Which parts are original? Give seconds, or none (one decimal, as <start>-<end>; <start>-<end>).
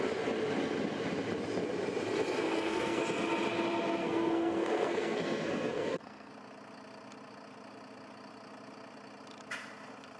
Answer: 0.0-2.4; 3.0-4.0; 6.3-10.2